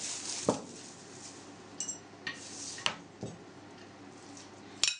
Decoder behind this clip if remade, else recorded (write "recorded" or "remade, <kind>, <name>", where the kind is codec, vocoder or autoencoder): recorded